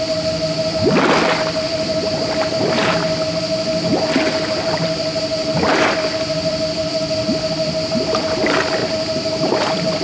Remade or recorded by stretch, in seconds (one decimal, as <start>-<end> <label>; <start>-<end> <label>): 0.0-2.8 remade; 2.8-3.4 recorded; 3.4-8.8 remade; 8.8-9.5 recorded; 9.5-10.0 remade